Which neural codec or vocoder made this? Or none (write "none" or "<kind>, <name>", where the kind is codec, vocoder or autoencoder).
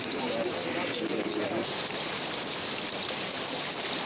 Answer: none